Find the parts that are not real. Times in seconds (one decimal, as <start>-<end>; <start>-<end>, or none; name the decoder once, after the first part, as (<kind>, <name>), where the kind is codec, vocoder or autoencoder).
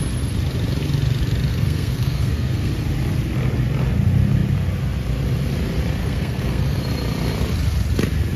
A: 1.5-2.7 (codec, SNAC); 6.0-6.8